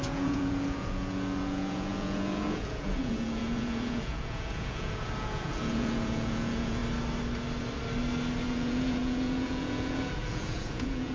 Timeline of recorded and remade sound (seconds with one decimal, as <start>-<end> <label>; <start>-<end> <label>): 0.0-6.8 remade; 6.8-8.4 recorded; 8.4-11.1 remade